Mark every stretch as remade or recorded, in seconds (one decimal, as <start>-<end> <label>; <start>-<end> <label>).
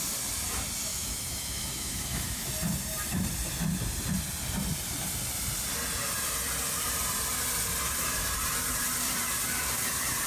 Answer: 0.0-0.9 recorded; 0.9-2.5 remade; 2.5-10.3 recorded